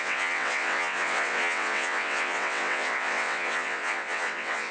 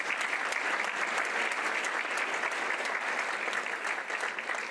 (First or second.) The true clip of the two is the second